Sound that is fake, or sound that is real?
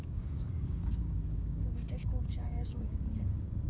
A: fake